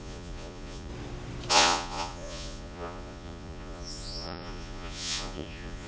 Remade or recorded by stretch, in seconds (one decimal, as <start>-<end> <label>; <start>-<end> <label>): 0.0-0.9 remade; 0.9-1.5 recorded; 1.5-5.9 remade